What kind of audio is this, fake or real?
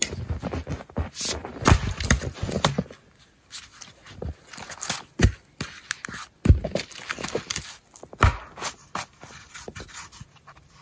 real